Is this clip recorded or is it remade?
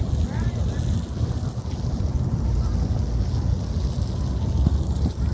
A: recorded